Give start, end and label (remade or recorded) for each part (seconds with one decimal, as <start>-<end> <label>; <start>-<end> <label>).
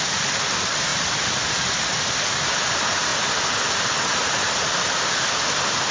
0.0-5.9 recorded